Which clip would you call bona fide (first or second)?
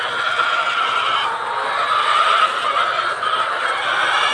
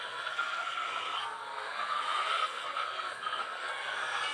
first